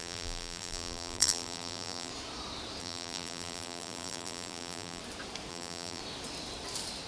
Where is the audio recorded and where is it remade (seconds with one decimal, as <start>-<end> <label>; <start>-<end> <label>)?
0.0-2.1 remade; 2.1-2.8 recorded; 2.8-5.0 remade; 5.0-5.5 recorded; 5.5-6.0 remade; 6.0-7.1 recorded